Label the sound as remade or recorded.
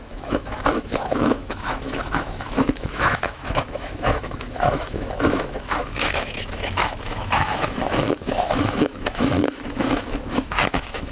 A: remade